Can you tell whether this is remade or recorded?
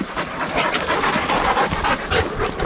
recorded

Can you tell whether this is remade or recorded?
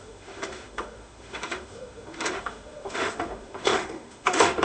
remade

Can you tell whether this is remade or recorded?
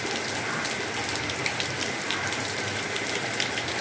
recorded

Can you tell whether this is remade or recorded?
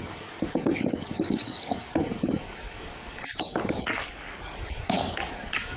remade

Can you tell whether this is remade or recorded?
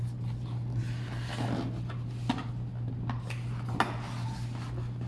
recorded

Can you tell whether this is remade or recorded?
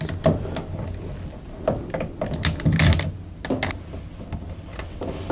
recorded